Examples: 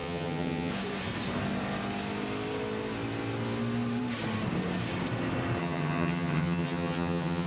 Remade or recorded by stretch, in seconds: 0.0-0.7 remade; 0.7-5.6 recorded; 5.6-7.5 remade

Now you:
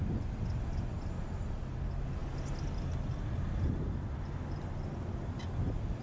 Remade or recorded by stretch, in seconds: 0.0-6.0 recorded